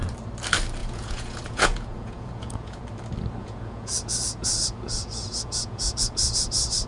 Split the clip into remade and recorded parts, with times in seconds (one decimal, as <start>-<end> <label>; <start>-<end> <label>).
0.0-0.8 recorded; 0.8-2.8 remade; 2.8-3.4 recorded; 3.4-6.4 remade; 6.4-6.9 recorded